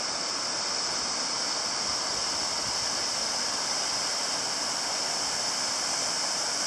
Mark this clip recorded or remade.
recorded